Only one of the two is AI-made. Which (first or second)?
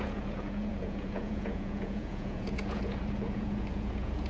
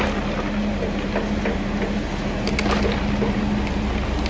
first